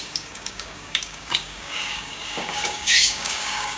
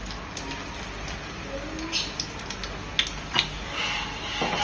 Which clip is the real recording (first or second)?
second